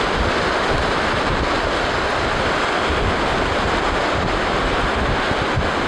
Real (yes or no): yes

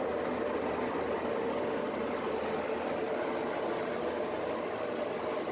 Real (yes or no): yes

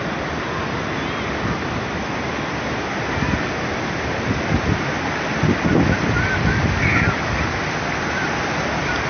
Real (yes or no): yes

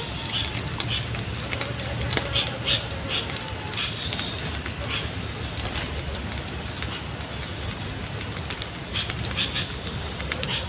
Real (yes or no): yes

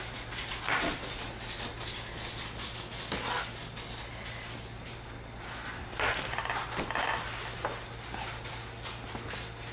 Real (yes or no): yes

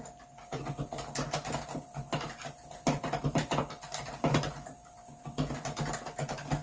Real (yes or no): yes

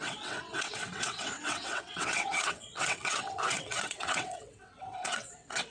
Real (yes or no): no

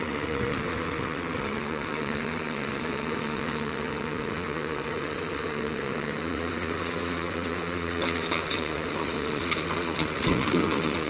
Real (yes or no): no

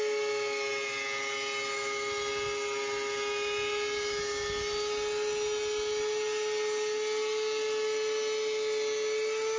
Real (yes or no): yes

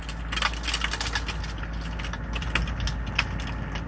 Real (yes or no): yes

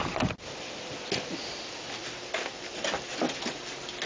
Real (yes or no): yes